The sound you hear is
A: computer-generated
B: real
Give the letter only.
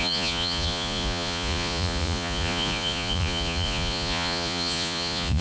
A